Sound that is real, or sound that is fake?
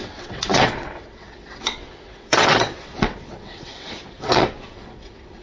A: fake